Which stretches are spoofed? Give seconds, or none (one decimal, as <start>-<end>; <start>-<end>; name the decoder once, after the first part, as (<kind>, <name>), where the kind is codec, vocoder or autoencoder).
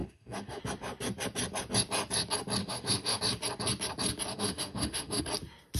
0.0-0.6 (autoencoder, DAC-VAE); 2.6-3.2; 4.3-5.2